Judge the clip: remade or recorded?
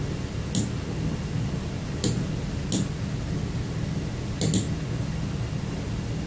recorded